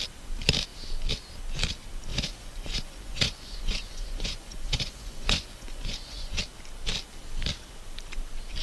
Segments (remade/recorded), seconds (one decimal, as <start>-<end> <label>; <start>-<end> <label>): 0.0-2.1 recorded; 2.1-6.4 remade; 6.4-8.6 recorded